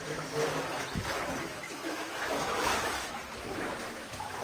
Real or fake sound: fake